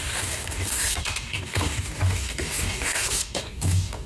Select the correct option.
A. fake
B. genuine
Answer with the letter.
A